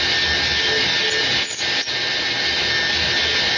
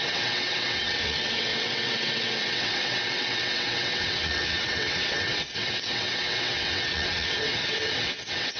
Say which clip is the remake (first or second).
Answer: second